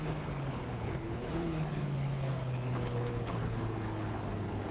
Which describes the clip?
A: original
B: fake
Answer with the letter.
B